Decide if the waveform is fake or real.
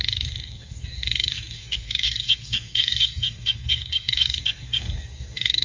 fake